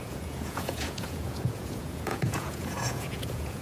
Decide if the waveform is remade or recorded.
remade